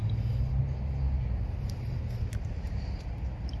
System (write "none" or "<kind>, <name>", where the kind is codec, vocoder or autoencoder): none